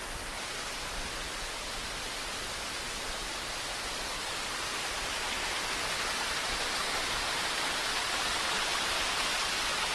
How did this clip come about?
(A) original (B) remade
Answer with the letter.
A